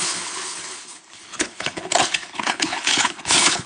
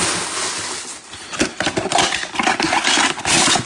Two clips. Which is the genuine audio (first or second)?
second